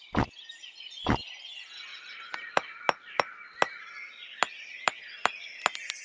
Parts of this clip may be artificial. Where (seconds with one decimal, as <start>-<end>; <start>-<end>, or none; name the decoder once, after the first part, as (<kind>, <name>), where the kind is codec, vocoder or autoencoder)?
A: none